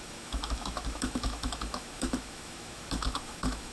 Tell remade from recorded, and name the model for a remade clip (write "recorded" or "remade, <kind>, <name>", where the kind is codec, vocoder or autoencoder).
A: remade, autoencoder, DAC-VAE